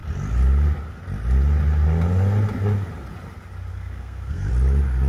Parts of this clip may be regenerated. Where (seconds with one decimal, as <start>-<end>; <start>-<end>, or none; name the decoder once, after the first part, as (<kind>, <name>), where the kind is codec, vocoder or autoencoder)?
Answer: 3.7-4.5 (codec, SNAC)